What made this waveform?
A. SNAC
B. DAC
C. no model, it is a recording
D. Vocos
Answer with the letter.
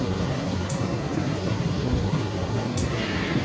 A